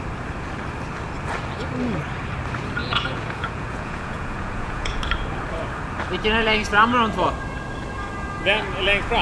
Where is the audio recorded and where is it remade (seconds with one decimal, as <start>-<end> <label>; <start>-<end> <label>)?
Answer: 0.0-2.8 recorded; 2.8-5.0 remade; 5.0-9.2 recorded